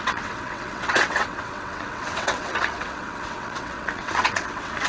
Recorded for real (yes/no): no